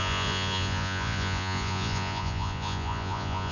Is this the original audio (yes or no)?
no